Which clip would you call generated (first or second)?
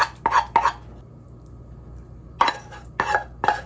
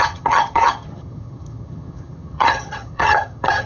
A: second